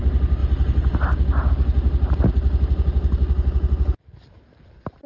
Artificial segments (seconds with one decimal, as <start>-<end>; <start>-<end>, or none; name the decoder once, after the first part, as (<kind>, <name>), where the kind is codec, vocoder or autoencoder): none